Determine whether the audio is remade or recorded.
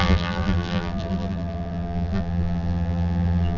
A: remade